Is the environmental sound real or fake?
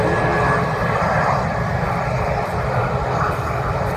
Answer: real